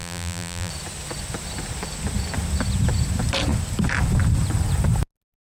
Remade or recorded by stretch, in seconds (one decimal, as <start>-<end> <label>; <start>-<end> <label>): 0.0-0.7 remade; 0.7-5.5 recorded